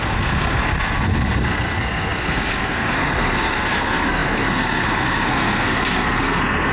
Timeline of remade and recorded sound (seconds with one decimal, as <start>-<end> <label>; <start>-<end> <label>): 0.0-6.7 remade